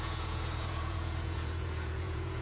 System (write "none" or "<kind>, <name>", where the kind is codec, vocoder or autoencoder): vocoder, Vocos